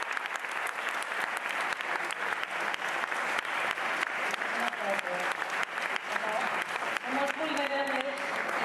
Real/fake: real